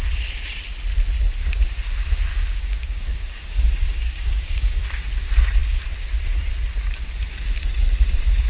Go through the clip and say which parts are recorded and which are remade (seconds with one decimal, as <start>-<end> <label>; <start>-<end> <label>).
0.0-2.3 recorded; 2.3-4.8 remade; 4.8-8.5 recorded